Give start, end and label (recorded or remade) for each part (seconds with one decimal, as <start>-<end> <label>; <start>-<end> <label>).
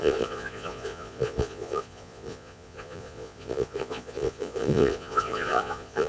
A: 0.0-6.1 remade